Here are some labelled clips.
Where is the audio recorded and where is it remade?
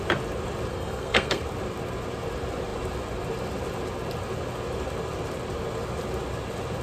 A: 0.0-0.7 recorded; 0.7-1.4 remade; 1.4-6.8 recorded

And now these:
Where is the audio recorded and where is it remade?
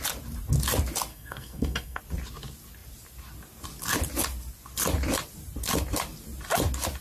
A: 0.0-1.1 recorded; 1.1-2.0 remade; 2.0-7.0 recorded